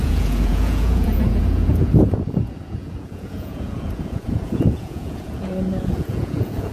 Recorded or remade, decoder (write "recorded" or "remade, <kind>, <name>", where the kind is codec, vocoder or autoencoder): remade, vocoder, Vocos